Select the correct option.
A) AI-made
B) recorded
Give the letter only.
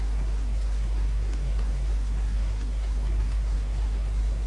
A